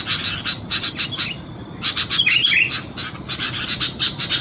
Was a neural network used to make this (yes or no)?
no